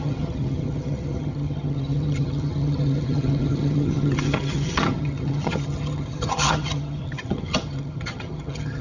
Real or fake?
fake